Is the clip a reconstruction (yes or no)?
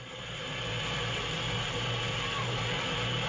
no